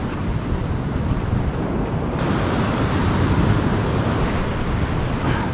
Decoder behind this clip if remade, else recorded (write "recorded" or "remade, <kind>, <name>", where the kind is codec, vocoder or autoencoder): recorded